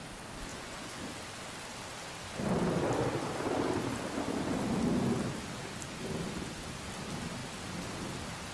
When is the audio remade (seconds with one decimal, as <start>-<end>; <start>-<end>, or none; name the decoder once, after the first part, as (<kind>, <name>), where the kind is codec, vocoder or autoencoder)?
0.5-1.0 (vocoder, Vocos)

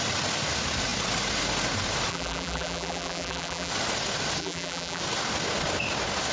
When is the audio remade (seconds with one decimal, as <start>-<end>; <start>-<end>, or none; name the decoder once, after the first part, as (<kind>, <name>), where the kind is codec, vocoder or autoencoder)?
2.1-3.7 (vocoder, BigVGAN v2); 4.4-5.0

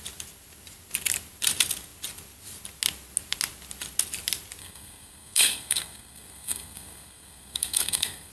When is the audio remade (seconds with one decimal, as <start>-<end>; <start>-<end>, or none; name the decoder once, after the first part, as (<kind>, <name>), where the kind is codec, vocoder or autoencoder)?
4.6-8.3 (codec, SNAC)

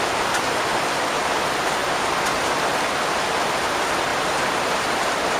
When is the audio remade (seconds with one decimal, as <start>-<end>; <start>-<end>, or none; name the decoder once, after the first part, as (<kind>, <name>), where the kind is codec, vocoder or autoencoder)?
0.7-1.2 (vocoder, BigVGAN v2); 1.8-2.8; 4.1-5.0

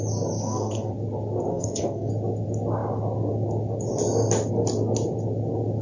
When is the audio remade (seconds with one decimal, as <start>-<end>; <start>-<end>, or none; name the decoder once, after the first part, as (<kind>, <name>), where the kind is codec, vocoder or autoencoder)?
0.4-0.9 (codec, SNAC); 1.5-2.1

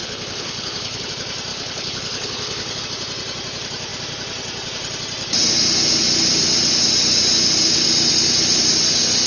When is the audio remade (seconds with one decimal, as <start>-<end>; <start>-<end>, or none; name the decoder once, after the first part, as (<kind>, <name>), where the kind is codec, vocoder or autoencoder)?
0.0-1.1 (codec, HILCodec); 1.5-2.8

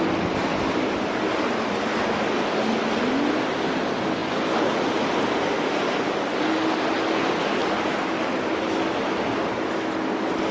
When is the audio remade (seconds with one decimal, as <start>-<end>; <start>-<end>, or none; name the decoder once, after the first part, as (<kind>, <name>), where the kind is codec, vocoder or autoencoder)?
none